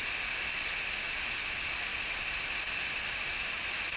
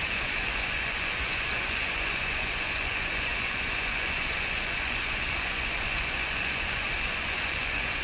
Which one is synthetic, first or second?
second